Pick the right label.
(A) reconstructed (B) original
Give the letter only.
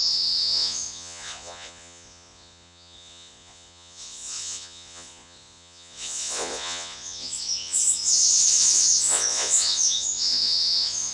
A